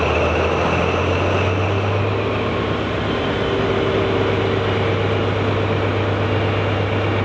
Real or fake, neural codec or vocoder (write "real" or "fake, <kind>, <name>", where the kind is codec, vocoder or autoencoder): real